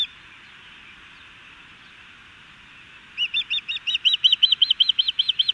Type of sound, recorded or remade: recorded